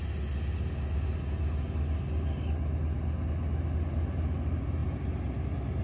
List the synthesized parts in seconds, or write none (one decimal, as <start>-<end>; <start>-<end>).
none